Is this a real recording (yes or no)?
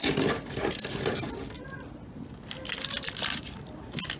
yes